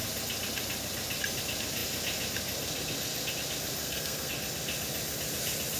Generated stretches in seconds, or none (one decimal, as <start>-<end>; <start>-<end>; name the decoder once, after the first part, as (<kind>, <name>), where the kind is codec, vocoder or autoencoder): 3.8-4.3 (codec, SNAC)

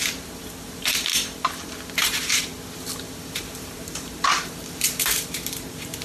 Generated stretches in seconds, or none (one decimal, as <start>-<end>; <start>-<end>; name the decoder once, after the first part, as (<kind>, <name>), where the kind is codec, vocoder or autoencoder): 0.0-1.1 (vocoder, BigVGAN v2); 1.9-2.5; 3.0-6.0

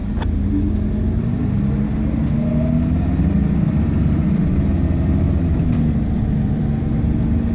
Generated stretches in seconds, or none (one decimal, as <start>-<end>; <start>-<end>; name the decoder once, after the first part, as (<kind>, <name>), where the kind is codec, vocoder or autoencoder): 3.2-4.7 (vocoder, BigVGAN v2); 5.6-7.5